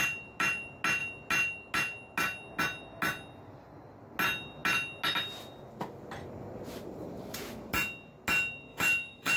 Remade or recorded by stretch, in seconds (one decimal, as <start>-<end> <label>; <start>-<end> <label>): 0.0-8.7 recorded; 8.7-9.4 remade